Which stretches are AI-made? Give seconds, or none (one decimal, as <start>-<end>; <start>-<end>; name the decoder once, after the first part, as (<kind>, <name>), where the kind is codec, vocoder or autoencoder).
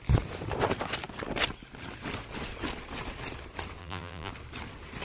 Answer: 3.8-4.3 (vocoder, BigVGAN v2)